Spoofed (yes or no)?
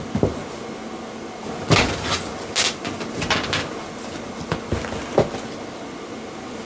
no